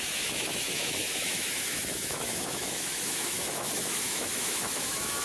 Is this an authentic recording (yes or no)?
no